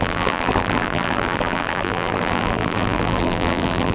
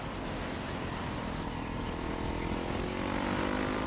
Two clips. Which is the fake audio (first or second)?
first